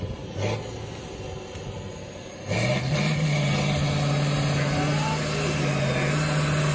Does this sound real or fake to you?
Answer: real